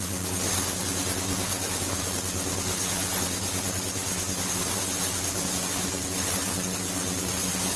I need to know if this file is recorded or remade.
recorded